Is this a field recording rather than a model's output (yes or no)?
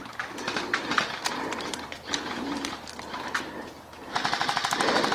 yes